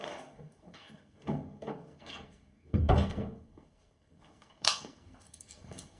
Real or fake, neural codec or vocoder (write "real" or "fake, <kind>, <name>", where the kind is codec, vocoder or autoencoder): fake, codec, SNAC